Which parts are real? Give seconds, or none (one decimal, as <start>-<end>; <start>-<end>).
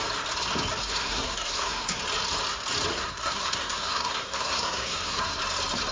0.0-0.8; 2.0-2.9; 5.4-5.9